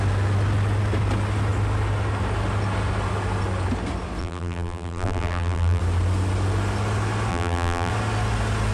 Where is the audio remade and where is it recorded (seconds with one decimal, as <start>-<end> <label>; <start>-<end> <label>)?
0.0-4.2 recorded; 4.2-5.8 remade; 5.8-7.3 recorded; 7.3-7.9 remade; 7.9-8.7 recorded

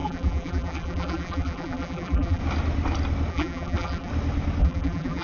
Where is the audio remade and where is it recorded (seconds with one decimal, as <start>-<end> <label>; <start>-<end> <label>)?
0.0-2.4 remade; 2.4-3.3 recorded; 3.3-4.1 remade; 4.1-4.6 recorded; 4.6-5.2 remade

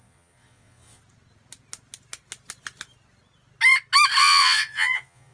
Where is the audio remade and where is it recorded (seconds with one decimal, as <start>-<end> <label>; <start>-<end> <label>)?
0.0-1.0 remade; 1.0-4.2 recorded; 4.2-5.3 remade

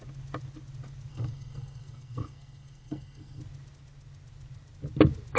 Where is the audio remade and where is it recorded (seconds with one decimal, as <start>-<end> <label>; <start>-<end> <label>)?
0.0-1.1 recorded; 1.1-3.4 remade; 3.4-5.4 recorded

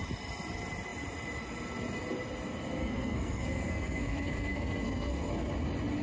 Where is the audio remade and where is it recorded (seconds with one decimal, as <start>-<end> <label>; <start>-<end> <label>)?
0.0-2.8 recorded; 2.8-5.3 remade; 5.3-6.0 recorded

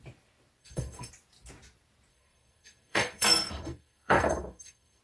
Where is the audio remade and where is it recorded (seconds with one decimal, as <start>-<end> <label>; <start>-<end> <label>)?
0.0-0.6 recorded; 0.6-1.1 remade; 1.1-2.1 recorded; 2.1-5.0 remade

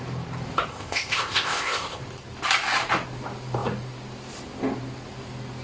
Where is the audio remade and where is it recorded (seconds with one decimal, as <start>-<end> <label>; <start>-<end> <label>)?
0.0-0.7 recorded; 0.7-2.0 remade; 2.0-5.6 recorded

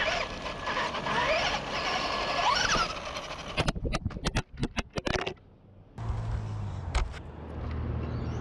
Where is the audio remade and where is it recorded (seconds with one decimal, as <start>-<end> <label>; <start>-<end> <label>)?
0.0-8.4 recorded